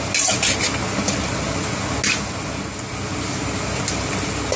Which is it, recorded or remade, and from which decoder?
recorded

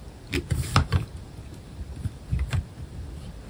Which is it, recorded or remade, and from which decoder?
remade, vocoder, BigVGAN v2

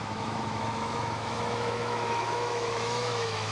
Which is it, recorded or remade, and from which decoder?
remade, autoencoder, DAC-VAE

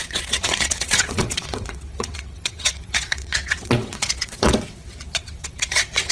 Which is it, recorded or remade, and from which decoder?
remade, vocoder, WaveNeXt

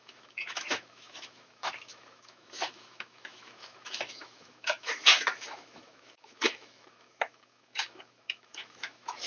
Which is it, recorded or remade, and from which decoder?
remade, autoencoder, DAC-VAE